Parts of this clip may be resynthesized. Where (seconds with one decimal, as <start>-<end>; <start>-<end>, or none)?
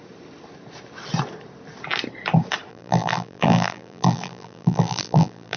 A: 2.7-5.6